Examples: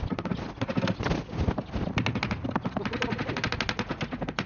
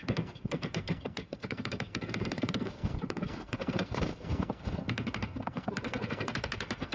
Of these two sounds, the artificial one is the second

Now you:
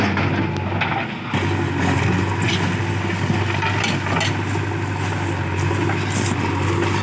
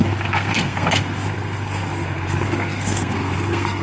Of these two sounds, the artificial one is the second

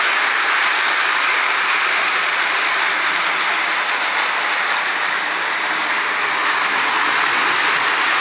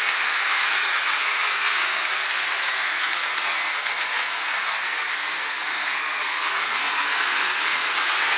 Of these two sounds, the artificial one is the second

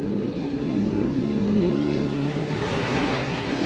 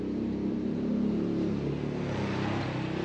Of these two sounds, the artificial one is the first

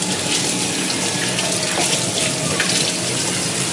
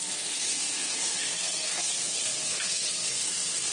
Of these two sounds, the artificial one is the second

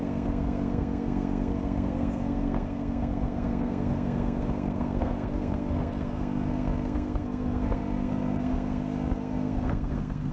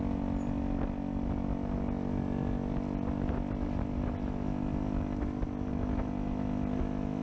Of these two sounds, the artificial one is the first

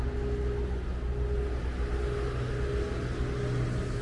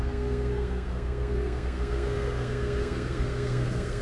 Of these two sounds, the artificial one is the second